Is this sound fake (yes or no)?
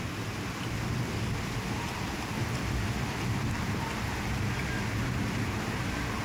no